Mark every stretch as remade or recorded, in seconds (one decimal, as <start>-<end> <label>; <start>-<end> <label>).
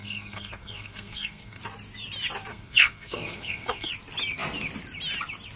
0.0-1.6 remade; 1.6-2.5 recorded; 2.5-3.9 remade; 3.9-5.6 recorded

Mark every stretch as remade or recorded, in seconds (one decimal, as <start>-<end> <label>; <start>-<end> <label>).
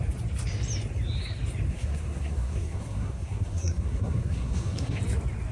0.0-1.7 recorded; 1.7-5.0 remade; 5.0-5.5 recorded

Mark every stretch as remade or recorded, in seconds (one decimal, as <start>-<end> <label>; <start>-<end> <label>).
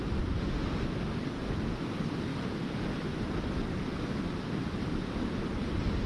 0.0-6.1 recorded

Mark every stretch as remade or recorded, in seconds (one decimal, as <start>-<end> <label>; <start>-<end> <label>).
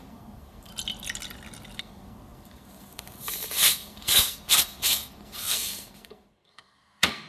0.0-0.7 remade; 0.7-1.8 recorded; 1.8-7.3 remade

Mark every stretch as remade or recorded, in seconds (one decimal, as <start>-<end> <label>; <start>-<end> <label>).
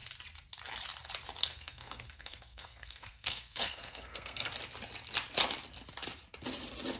0.0-1.4 recorded; 1.4-4.5 remade; 4.5-7.0 recorded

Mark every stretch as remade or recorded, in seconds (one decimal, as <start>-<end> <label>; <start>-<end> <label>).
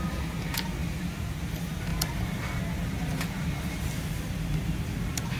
0.0-5.4 recorded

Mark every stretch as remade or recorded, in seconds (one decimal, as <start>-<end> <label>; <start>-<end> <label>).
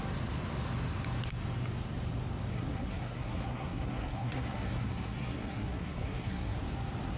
0.0-2.5 recorded; 2.5-6.6 remade; 6.6-7.2 recorded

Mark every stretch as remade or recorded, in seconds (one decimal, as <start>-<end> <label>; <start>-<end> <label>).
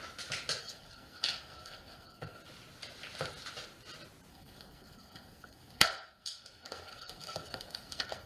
0.0-0.6 recorded; 0.6-2.4 remade; 2.4-4.3 recorded; 4.3-8.3 remade